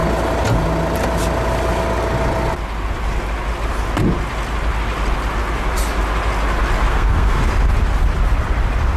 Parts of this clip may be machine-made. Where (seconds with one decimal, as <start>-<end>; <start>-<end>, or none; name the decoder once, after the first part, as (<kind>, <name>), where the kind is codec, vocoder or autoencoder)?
6.9-7.4 (codec, SNAC)